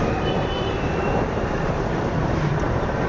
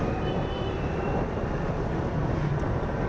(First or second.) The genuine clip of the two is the second